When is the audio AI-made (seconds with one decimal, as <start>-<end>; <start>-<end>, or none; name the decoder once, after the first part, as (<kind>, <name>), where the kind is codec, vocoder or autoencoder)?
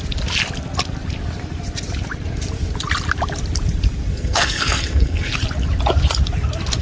4.1-5.3 (codec, SNAC)